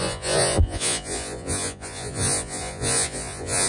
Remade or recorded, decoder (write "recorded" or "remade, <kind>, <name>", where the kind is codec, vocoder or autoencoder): remade, vocoder, Vocos